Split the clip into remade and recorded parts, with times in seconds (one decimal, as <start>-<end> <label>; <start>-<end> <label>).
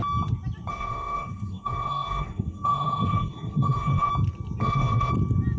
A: 0.0-0.7 recorded; 0.7-4.1 remade; 4.1-4.6 recorded; 4.6-5.1 remade; 5.1-5.6 recorded